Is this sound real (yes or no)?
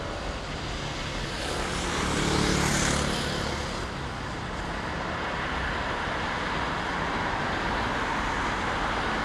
yes